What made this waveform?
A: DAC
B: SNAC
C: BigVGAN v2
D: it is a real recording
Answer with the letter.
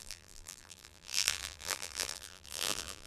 C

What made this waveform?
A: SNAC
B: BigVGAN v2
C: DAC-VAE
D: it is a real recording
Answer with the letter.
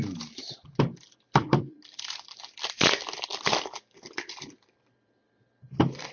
B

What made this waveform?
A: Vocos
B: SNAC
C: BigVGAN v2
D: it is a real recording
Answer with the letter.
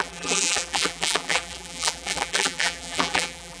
C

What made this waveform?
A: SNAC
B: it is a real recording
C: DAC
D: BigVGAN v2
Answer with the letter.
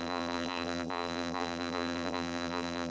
D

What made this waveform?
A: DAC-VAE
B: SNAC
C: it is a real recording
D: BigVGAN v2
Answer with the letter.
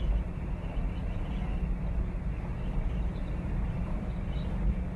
C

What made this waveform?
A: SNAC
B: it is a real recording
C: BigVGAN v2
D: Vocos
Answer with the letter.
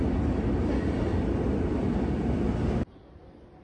B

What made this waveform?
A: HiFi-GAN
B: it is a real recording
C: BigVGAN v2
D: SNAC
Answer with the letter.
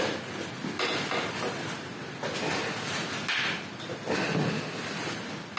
B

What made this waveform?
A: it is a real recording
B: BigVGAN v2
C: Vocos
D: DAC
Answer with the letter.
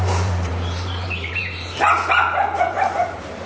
B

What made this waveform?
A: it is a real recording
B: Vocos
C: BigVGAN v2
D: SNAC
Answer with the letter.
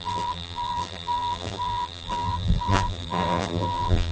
C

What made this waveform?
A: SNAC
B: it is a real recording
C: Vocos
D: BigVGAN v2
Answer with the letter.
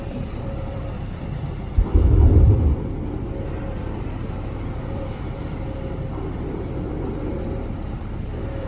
D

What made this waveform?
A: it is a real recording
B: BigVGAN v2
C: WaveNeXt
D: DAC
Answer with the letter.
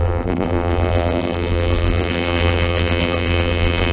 B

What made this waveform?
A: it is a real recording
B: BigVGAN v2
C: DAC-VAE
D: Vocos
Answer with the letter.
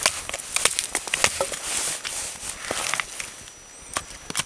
A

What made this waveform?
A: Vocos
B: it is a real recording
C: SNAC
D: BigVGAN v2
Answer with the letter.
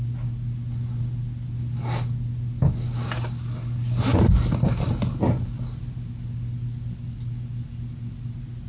B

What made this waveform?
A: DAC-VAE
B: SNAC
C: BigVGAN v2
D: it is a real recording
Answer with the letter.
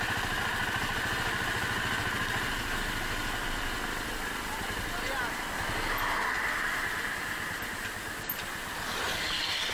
D